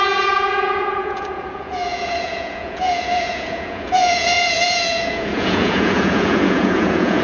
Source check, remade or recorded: remade